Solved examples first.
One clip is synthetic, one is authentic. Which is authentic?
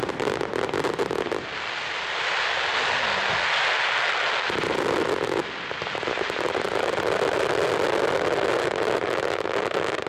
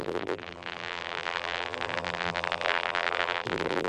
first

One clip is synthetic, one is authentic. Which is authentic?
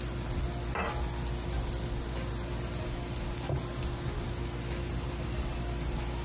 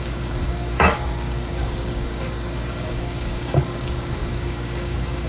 first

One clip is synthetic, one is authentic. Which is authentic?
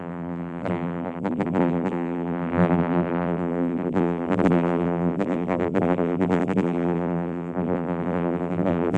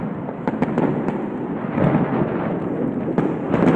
second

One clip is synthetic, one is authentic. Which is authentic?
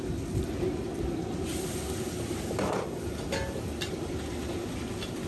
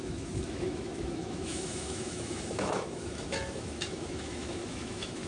first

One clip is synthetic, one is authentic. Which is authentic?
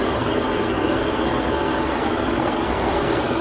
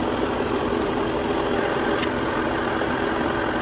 second